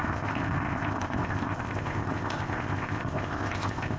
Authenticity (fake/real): fake